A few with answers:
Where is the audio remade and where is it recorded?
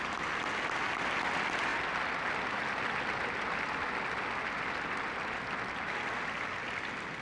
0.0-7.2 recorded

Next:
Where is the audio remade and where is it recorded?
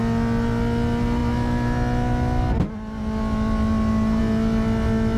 0.0-5.2 recorded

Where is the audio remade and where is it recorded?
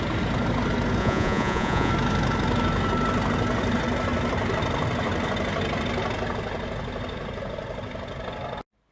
0.0-1.0 recorded; 1.0-1.9 remade; 1.9-8.9 recorded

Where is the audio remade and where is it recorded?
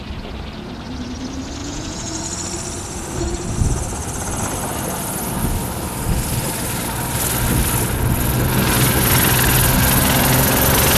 0.0-1.6 recorded; 1.6-2.2 remade; 2.2-11.0 recorded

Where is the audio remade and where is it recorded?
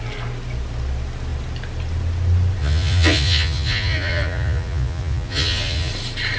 0.0-2.6 recorded; 2.6-5.9 remade; 5.9-6.4 recorded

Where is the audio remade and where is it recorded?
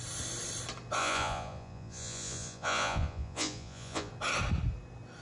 0.0-1.0 recorded; 1.0-4.1 remade; 4.1-5.2 recorded